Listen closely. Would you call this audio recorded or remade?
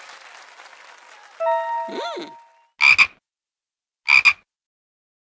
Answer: recorded